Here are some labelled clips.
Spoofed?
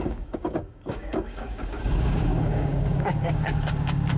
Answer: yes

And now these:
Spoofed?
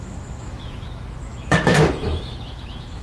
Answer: yes